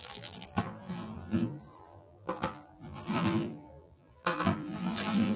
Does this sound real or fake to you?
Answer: fake